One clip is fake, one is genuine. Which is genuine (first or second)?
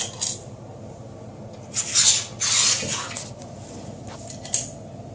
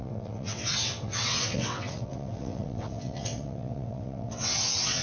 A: first